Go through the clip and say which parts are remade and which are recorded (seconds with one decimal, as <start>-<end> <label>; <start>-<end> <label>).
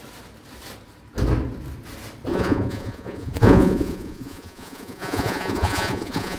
0.0-2.3 recorded; 2.3-6.4 remade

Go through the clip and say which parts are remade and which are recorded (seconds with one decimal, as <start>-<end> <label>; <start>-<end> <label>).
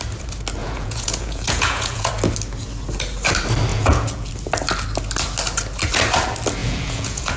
0.0-0.6 recorded; 0.6-2.1 remade; 2.1-3.7 recorded; 3.7-4.3 remade; 4.3-6.6 recorded; 6.6-7.4 remade